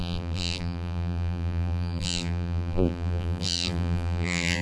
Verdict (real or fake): fake